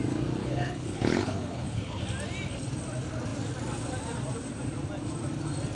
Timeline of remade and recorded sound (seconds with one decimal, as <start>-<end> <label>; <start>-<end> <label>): 0.0-0.4 recorded; 0.4-2.0 remade; 2.0-5.7 recorded